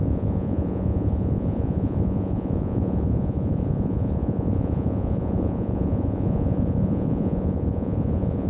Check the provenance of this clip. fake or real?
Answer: fake